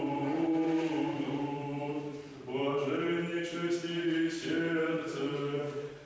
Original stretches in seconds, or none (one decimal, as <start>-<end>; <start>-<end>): 3.3-4.8

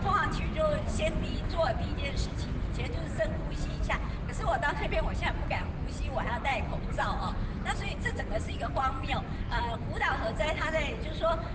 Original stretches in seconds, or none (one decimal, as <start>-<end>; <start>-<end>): 0.0-11.5

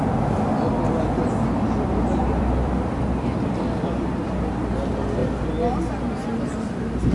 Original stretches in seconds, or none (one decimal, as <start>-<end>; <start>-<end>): 0.0-2.2; 3.7-7.1

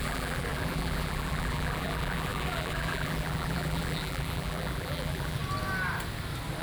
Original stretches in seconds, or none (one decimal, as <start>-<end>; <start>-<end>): 5.4-6.6

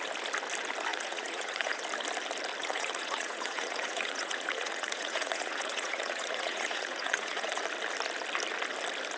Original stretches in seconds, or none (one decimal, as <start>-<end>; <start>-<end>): 0.0-0.9; 1.8-2.6; 7.6-9.2